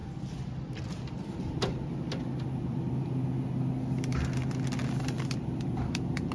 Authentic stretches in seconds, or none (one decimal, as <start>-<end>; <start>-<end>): 3.1-4.8